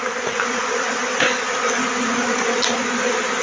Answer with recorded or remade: recorded